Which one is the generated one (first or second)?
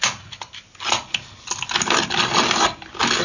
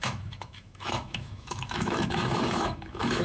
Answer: second